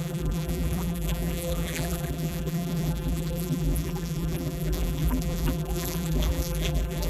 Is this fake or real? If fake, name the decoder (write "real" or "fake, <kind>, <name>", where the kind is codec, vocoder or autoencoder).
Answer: fake, vocoder, BigVGAN v2